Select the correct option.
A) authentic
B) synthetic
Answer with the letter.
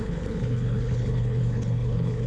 B